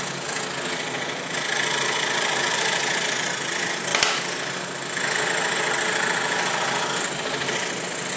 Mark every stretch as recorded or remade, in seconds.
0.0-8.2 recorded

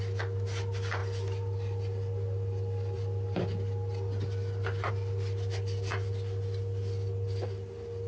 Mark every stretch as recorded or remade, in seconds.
0.0-8.1 recorded

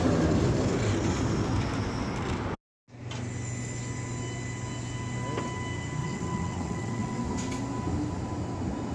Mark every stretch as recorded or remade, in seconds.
0.0-6.0 recorded; 6.0-7.2 remade; 7.2-8.9 recorded

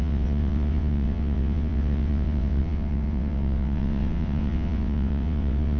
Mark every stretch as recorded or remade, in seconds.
0.0-5.8 remade

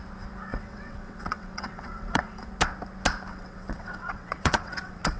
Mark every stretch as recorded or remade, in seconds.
0.0-0.5 recorded; 0.5-2.5 remade; 2.5-3.3 recorded; 3.3-5.2 remade

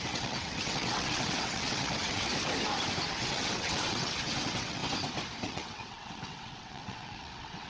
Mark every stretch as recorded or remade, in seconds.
0.0-2.3 remade; 2.3-3.1 recorded; 3.1-4.8 remade; 4.8-5.4 recorded; 5.4-7.7 remade